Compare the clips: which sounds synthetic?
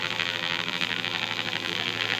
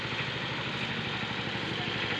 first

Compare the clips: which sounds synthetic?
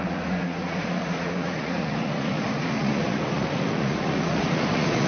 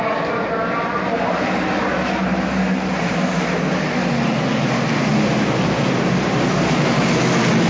first